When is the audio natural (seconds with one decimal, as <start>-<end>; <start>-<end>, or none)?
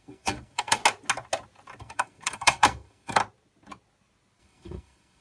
0.8-1.8; 3.2-4.4